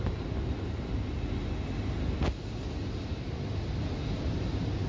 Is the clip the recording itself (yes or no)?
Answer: yes